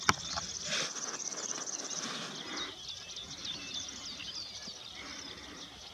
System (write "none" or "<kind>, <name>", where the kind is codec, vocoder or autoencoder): none